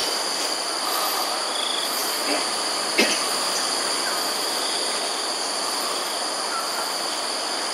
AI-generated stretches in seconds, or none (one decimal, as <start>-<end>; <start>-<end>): 0.0-1.4; 2.0-4.8